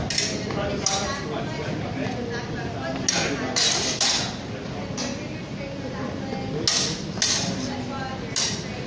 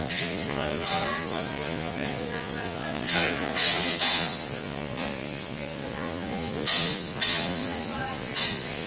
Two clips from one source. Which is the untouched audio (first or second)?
first